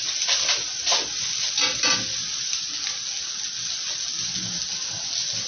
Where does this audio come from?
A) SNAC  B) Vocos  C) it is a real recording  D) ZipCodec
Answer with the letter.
C